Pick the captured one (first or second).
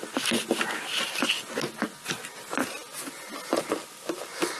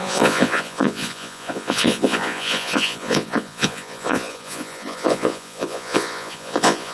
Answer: first